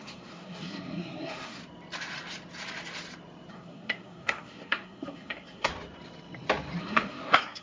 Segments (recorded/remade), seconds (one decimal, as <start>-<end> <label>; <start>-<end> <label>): 0.0-1.6 remade; 1.6-3.5 recorded; 3.5-5.7 remade; 5.7-6.8 recorded; 6.8-7.6 remade